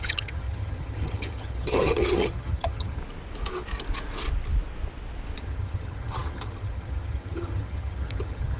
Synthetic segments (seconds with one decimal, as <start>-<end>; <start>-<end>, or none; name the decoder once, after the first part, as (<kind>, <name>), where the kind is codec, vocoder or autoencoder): 0.0-3.0 (vocoder, HiFi-GAN); 5.4-8.6